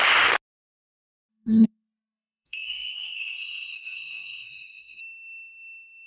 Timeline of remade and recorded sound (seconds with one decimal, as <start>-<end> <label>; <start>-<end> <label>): 0.0-1.3 recorded; 1.3-5.0 remade; 5.0-6.1 recorded